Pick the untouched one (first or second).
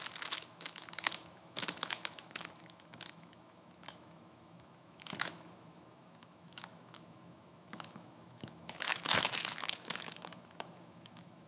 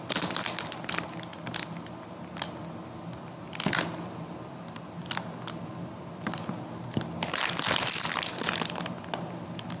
second